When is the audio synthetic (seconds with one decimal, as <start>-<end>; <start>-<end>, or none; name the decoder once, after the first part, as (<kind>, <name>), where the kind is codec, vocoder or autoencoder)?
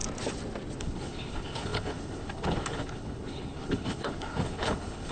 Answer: 0.8-5.1 (codec, HILCodec)